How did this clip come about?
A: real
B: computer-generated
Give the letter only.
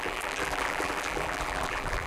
B